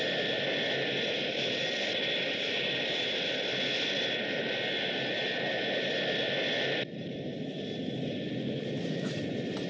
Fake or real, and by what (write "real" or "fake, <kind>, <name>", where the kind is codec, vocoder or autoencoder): fake, vocoder, BigVGAN v2